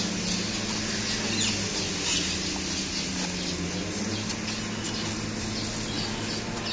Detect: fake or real real